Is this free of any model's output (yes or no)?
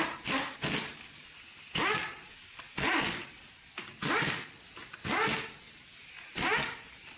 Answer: yes